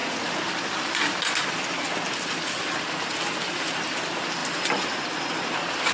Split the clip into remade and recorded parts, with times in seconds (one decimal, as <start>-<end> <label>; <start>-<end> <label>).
0.0-5.9 recorded